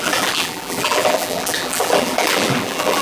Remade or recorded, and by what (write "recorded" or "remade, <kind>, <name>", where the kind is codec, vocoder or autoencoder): remade, vocoder, BigVGAN v2